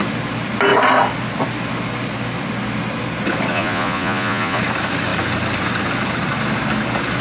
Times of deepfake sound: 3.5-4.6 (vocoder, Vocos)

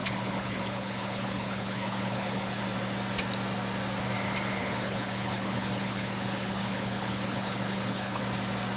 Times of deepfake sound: 0.0-2.6 (codec, HILCodec); 4.6-8.2

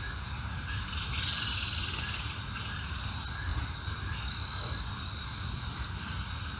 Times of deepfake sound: none